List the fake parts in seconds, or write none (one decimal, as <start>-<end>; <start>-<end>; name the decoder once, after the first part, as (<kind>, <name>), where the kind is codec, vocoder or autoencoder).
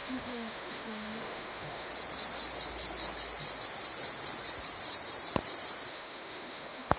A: 0.0-1.9 (autoencoder, DAC-VAE); 5.9-7.0